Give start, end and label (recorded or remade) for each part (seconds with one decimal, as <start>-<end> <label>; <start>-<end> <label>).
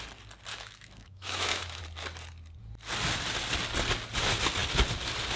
0.0-0.5 recorded; 0.5-1.8 remade; 1.8-5.4 recorded